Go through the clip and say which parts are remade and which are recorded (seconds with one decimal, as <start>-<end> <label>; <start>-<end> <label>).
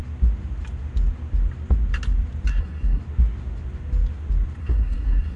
0.0-2.5 recorded; 2.5-3.0 remade; 3.0-4.6 recorded; 4.6-5.4 remade